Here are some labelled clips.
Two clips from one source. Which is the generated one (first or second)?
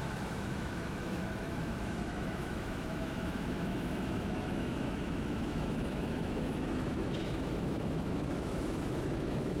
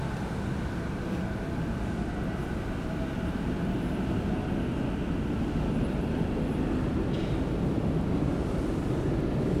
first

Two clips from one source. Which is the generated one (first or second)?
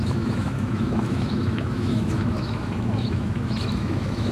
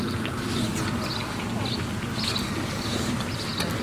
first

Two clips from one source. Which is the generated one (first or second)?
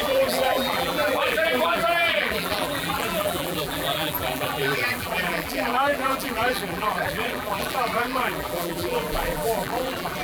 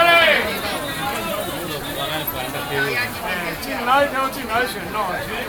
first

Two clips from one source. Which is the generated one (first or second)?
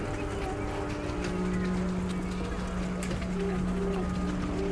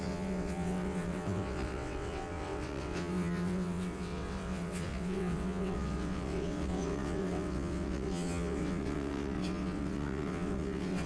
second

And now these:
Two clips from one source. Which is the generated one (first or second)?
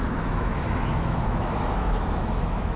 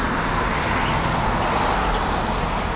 first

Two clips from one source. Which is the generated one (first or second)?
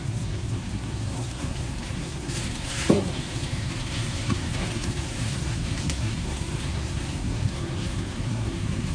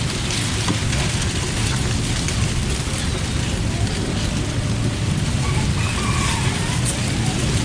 first